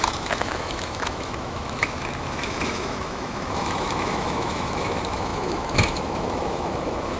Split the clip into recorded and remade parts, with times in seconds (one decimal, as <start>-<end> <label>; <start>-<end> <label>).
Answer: 0.0-7.2 remade